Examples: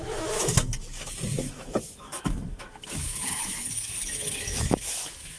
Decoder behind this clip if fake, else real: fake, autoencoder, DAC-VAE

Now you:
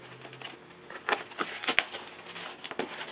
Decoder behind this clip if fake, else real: real